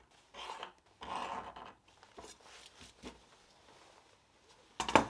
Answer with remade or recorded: recorded